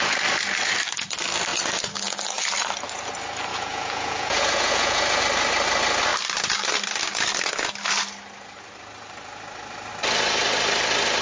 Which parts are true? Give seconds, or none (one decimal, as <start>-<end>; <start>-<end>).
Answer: 0.0-3.5; 5.2-11.2